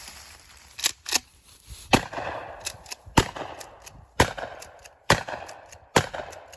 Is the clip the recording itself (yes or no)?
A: no